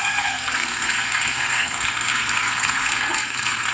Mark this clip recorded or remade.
remade